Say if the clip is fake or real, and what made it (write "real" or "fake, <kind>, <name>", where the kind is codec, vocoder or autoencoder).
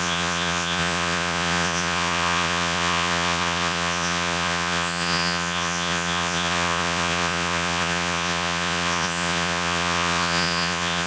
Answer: fake, vocoder, Vocos